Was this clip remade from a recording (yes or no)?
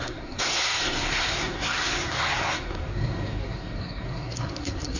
yes